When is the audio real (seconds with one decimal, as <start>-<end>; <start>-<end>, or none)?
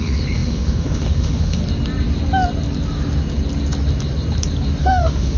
1.6-4.8